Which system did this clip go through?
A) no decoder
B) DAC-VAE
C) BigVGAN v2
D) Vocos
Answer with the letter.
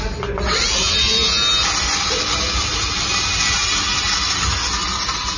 A